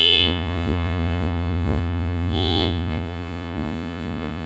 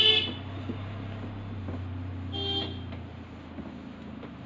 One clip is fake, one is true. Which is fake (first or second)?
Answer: first